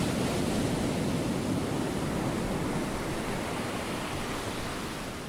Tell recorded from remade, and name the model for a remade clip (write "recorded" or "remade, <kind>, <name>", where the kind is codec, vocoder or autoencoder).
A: recorded